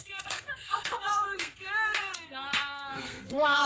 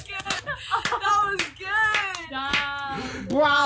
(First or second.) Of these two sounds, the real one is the second